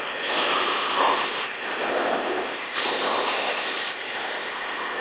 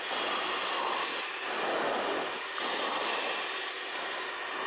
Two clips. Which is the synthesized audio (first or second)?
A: first